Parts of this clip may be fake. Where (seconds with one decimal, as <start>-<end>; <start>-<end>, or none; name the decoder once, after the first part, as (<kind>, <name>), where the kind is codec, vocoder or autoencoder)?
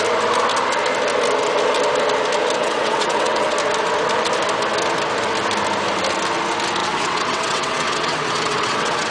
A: 2.6-3.5 (vocoder, WaveNeXt); 6.8-9.1